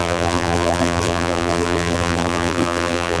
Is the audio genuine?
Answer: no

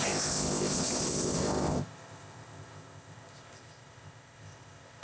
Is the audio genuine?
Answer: no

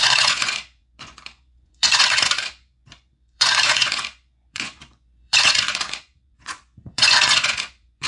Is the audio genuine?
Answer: no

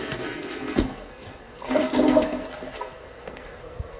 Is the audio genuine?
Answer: no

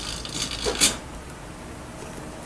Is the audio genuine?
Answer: yes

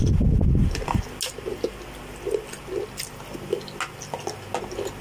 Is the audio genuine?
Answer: yes